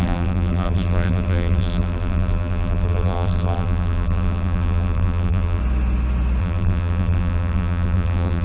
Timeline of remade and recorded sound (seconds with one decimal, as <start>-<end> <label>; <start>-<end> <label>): 0.0-5.6 remade; 5.6-6.4 recorded; 6.4-8.4 remade